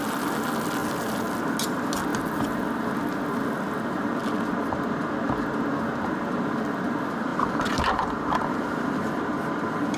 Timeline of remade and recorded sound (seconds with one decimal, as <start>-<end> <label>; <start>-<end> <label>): 0.0-0.8 recorded; 0.8-1.4 remade; 1.4-7.3 recorded; 7.3-10.0 remade